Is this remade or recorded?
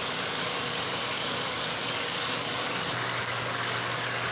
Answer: remade